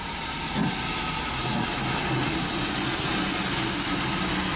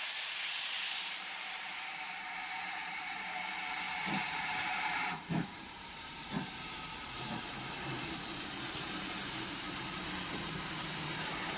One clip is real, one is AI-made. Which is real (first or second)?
first